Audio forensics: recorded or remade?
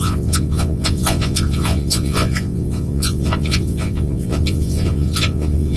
remade